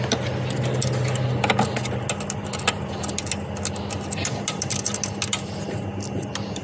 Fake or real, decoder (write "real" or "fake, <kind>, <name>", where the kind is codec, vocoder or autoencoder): real